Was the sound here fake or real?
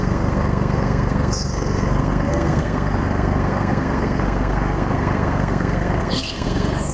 fake